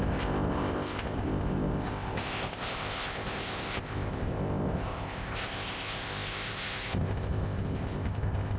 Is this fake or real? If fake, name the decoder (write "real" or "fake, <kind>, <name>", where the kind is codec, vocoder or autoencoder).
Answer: fake, codec, ZipCodec